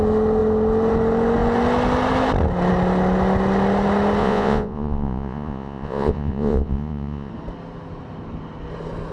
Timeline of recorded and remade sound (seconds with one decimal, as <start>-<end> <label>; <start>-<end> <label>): 0.0-4.2 recorded; 4.2-7.3 remade; 7.3-9.1 recorded